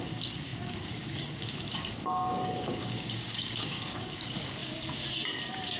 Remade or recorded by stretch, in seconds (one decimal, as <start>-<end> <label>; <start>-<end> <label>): 0.0-4.6 remade; 4.6-5.8 recorded